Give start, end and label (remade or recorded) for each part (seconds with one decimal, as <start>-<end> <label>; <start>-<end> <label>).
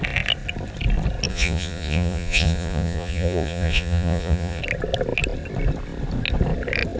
0.0-1.3 recorded; 1.3-4.6 remade; 4.6-7.0 recorded